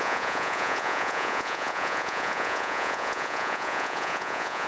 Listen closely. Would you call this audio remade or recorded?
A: remade